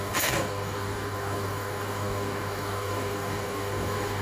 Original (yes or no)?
no